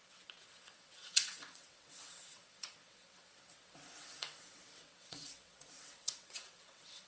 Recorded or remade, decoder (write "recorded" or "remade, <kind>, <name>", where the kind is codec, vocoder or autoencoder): remade, vocoder, WaveNeXt